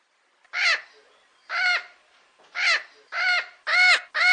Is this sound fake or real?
real